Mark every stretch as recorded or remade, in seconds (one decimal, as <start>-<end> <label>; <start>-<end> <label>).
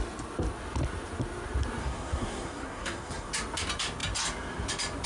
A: 0.0-1.8 recorded; 1.8-3.3 remade; 3.3-5.1 recorded